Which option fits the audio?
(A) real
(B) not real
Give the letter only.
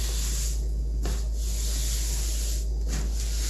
A